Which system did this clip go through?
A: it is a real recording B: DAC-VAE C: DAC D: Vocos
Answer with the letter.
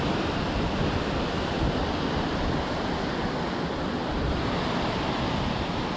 A